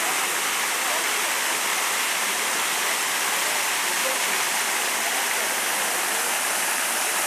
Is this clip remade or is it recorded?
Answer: recorded